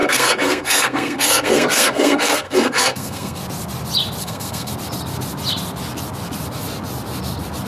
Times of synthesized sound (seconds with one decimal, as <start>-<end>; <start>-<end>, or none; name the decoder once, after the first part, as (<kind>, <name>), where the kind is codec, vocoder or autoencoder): 0.0-3.4 (codec, SNAC); 4.2-4.7